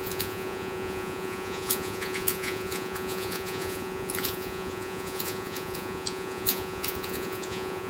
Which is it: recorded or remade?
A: remade